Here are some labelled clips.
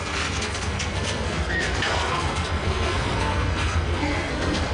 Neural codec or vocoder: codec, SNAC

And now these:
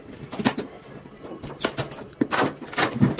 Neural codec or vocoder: none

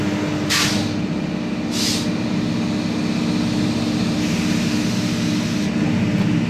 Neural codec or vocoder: none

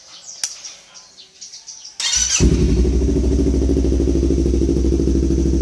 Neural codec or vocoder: none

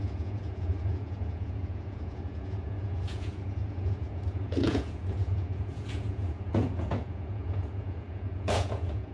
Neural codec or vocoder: vocoder, Vocos